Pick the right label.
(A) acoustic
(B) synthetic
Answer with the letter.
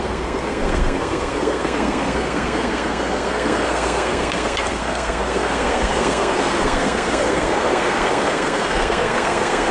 B